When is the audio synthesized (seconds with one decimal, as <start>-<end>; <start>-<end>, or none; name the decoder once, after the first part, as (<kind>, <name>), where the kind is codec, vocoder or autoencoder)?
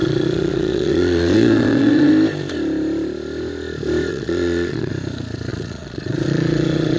0.0-2.1 (vocoder, Vocos); 4.1-4.9; 5.5-7.0